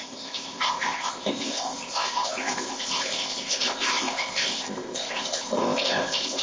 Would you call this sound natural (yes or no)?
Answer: no